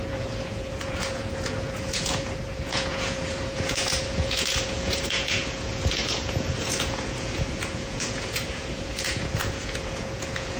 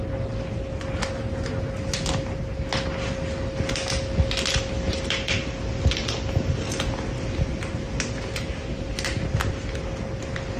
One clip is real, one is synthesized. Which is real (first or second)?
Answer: second